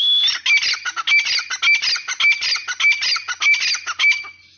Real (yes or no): yes